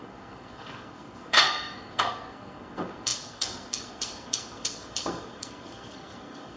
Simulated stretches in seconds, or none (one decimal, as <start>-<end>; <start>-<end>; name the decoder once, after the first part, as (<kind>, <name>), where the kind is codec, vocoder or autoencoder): 0.0-6.6 (codec, SNAC)

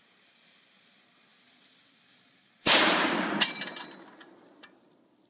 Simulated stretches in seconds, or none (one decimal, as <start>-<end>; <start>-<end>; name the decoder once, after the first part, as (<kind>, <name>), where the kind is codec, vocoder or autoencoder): 1.3-3.5 (vocoder, BigVGAN v2)

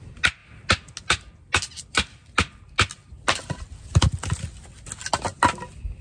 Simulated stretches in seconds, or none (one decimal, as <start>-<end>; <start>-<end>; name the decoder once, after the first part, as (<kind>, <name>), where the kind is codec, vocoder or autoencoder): none

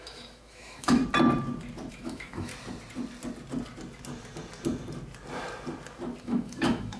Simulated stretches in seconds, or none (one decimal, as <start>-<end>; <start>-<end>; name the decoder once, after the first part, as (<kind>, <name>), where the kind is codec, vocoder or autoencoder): 0.0-1.0 (autoencoder, DAC-VAE); 1.9-2.5; 6.2-7.0

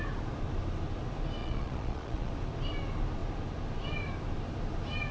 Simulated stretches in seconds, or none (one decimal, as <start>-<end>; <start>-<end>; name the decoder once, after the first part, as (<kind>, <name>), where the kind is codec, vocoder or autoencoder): 1.4-2.3 (vocoder, Vocos)

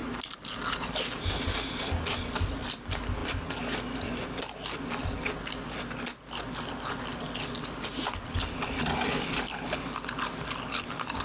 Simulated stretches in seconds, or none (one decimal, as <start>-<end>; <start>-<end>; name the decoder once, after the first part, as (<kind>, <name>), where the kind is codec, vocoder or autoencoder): none